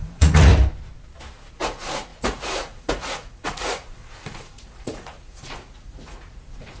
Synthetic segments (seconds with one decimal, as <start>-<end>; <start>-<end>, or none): 0.0-0.5; 1.5-6.8